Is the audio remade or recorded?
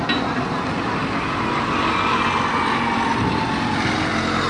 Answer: recorded